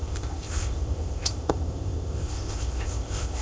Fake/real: fake